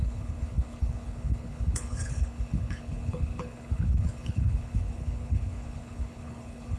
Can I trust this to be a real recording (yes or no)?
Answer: no